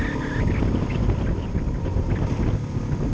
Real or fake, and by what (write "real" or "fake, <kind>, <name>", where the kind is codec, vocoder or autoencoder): real